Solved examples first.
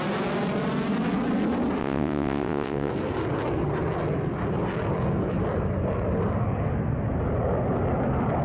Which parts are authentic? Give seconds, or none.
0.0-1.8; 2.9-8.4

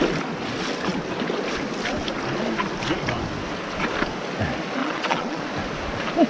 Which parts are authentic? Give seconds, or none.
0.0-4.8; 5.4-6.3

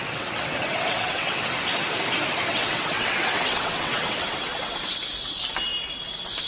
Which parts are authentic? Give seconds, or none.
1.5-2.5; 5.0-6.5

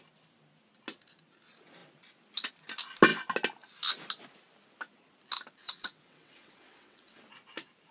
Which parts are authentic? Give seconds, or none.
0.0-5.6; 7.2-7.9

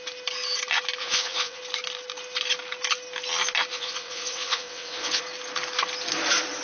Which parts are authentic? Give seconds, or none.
0.0-1.0; 1.6-3.7; 5.2-6.6

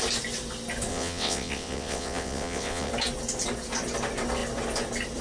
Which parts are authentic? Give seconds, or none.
0.0-0.9; 2.9-5.2

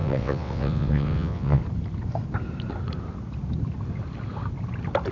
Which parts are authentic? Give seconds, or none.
1.6-5.1